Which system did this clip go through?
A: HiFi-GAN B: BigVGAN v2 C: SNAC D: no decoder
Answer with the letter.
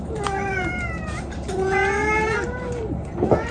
B